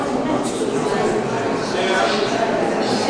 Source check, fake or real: real